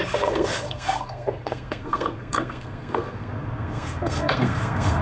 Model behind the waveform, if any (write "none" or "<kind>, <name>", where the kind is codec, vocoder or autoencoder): codec, SNAC